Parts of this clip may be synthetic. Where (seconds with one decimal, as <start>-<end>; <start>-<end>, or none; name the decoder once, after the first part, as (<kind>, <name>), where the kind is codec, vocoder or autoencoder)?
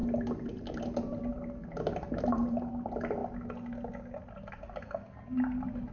0.0-0.8 (vocoder, BigVGAN v2); 1.3-2.7